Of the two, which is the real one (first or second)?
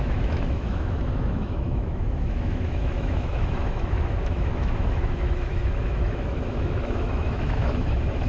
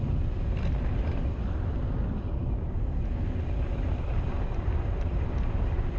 second